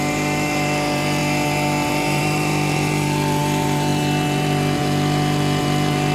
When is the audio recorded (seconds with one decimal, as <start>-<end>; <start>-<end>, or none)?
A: none